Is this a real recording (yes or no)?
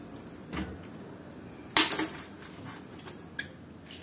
yes